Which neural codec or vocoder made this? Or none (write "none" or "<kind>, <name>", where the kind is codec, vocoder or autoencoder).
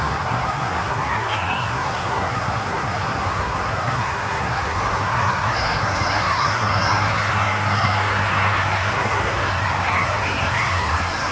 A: codec, SNAC